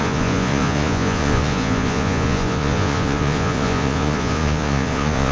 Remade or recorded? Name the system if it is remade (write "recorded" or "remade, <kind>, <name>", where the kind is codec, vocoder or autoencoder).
remade, vocoder, Vocos